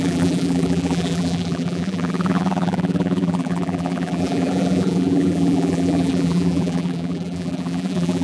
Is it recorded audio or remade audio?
remade